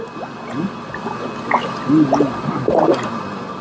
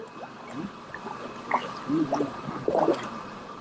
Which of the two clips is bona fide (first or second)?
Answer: first